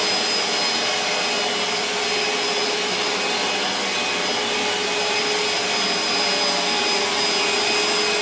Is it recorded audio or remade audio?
recorded